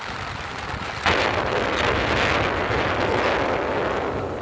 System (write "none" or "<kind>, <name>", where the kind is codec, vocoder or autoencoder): none